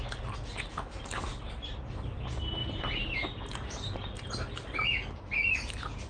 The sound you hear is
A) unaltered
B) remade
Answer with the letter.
A